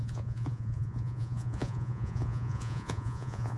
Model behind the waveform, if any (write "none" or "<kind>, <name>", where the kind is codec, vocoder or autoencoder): vocoder, Vocos